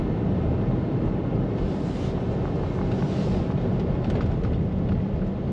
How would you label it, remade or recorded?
recorded